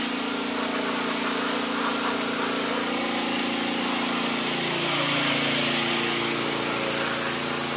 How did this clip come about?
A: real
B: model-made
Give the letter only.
A